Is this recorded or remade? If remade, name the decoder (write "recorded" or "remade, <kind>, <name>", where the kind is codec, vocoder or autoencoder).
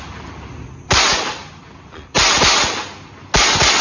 recorded